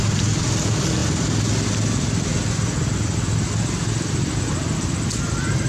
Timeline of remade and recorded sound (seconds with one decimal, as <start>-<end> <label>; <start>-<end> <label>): 0.0-5.7 recorded